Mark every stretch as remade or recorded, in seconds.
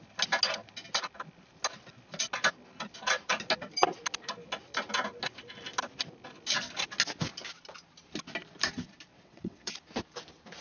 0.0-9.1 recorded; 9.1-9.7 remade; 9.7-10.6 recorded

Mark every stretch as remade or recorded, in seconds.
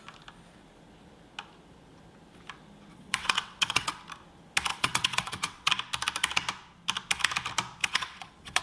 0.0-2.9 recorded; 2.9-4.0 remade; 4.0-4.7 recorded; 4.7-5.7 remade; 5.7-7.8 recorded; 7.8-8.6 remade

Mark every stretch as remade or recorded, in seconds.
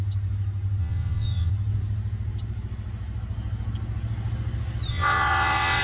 0.0-0.8 recorded; 0.8-1.5 remade; 1.5-4.9 recorded; 4.9-5.8 remade